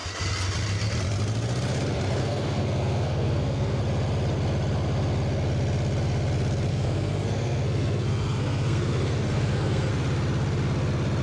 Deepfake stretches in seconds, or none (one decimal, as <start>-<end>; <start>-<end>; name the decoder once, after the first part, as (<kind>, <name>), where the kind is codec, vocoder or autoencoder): 2.2-3.8 (codec, SNAC); 6.7-9.9